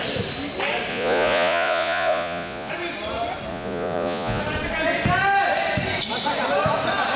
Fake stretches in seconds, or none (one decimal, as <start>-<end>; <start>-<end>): 0.9-2.7; 3.5-4.4